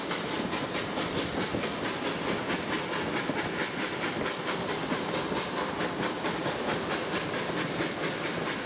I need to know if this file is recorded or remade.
recorded